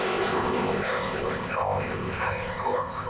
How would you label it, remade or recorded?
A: remade